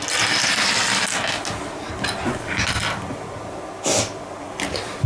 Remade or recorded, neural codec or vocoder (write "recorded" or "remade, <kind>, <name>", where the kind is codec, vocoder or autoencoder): recorded